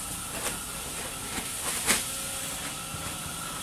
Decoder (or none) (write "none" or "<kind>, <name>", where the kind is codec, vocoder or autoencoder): vocoder, BigVGAN v2